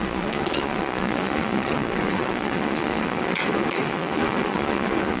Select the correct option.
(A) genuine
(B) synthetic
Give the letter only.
B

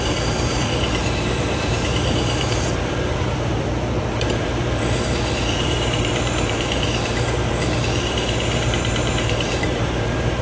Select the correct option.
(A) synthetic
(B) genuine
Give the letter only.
A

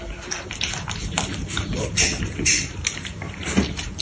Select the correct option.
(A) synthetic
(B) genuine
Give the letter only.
B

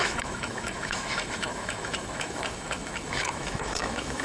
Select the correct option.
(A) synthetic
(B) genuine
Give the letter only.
A